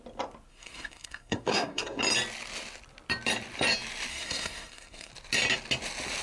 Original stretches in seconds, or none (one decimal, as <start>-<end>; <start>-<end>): 0.0-0.5; 2.0-4.1; 5.1-6.2